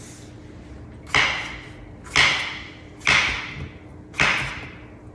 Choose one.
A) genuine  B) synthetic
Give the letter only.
A